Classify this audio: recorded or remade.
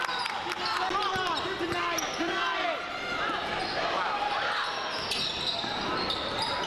recorded